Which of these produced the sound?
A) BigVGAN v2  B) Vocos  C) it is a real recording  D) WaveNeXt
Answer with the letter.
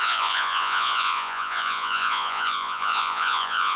B